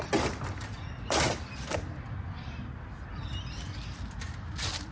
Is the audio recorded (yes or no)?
yes